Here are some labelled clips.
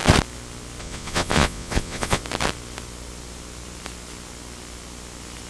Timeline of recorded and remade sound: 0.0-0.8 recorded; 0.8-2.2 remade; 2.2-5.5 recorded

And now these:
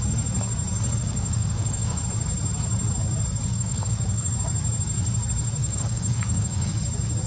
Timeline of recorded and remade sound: 0.0-1.0 recorded; 1.0-2.0 remade; 2.0-3.5 recorded; 3.5-4.3 remade; 4.3-5.6 recorded; 5.6-6.8 remade; 6.8-7.3 recorded

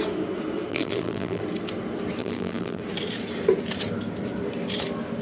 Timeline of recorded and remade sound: 0.0-0.7 recorded; 0.7-1.4 remade; 1.4-2.2 recorded; 2.2-2.8 remade; 2.8-5.2 recorded

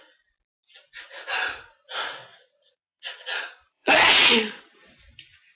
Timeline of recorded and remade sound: 0.0-2.2 recorded; 2.2-5.0 remade; 5.0-5.6 recorded

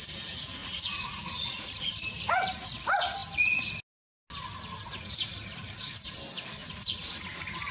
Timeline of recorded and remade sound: 0.0-0.6 recorded; 0.6-1.9 remade; 1.9-6.6 recorded; 6.6-7.2 remade; 7.2-7.7 recorded